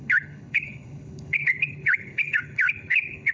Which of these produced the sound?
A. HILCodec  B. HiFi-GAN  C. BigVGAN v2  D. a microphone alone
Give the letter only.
A